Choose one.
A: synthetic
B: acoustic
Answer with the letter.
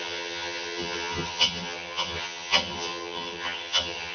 A